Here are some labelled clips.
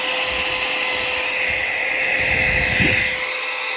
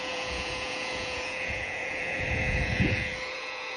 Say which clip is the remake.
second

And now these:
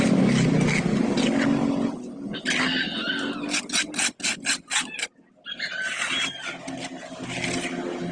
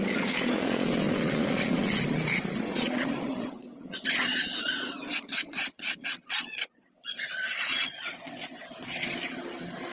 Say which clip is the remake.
second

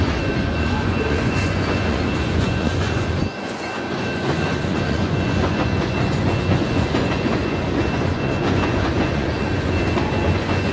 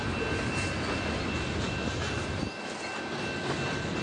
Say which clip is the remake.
first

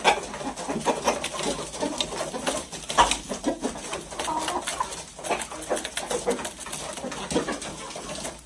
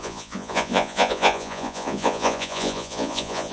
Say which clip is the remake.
second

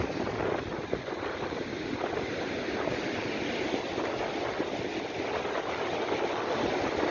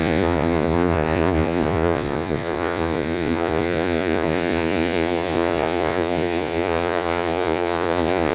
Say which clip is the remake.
second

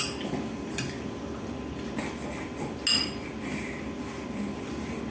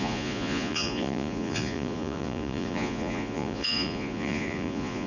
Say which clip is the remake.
second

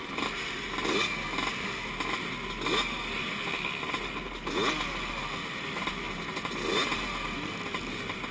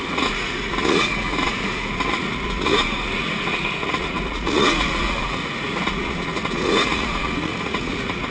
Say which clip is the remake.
second